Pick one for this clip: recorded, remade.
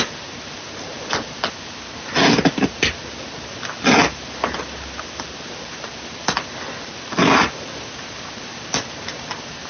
recorded